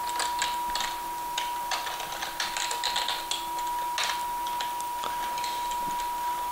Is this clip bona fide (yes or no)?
yes